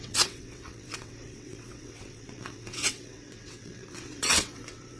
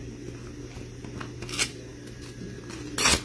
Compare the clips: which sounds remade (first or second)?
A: first